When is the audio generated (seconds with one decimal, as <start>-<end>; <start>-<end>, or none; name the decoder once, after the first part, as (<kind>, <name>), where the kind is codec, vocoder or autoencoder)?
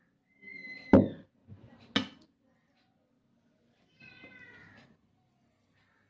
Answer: none